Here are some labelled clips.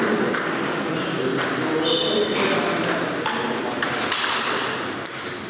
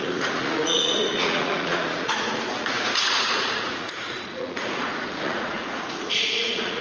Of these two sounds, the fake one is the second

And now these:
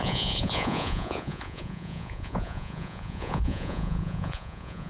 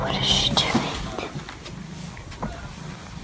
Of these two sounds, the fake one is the first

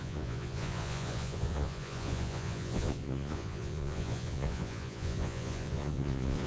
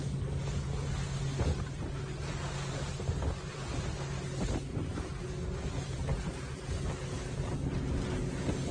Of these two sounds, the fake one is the first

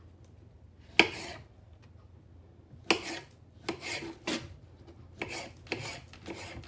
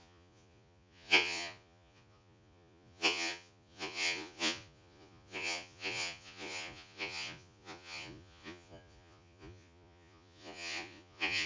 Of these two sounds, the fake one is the second